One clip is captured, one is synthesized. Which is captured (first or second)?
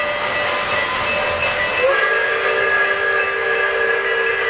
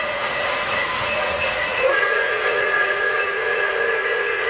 first